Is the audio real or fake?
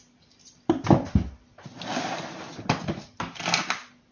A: real